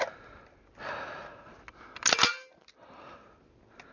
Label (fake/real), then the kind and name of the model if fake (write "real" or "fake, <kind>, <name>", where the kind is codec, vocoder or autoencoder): real